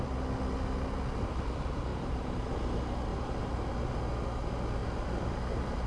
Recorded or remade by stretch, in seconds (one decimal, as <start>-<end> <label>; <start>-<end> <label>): 0.0-1.9 recorded; 1.9-2.5 remade; 2.5-3.1 recorded; 3.1-3.7 remade; 3.7-4.8 recorded; 4.8-5.9 remade